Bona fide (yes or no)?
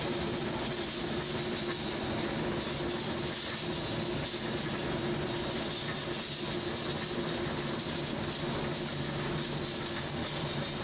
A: yes